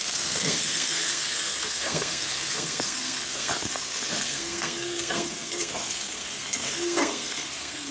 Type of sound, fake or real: fake